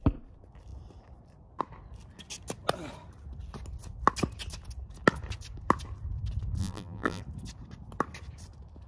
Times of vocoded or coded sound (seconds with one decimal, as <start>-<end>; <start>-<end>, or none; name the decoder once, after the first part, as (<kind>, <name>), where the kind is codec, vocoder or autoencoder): 6.6-7.2 (vocoder, BigVGAN v2)